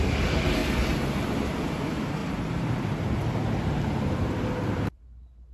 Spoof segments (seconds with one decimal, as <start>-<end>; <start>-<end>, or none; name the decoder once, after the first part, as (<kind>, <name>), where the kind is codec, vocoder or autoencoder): 2.2-5.0 (vocoder, BigVGAN v2)